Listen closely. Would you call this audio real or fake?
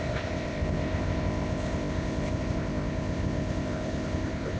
fake